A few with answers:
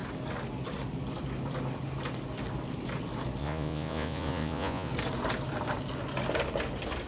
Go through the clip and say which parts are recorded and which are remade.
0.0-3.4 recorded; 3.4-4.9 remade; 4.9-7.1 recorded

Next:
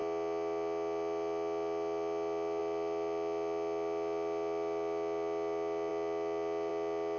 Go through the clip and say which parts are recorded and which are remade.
0.0-7.2 recorded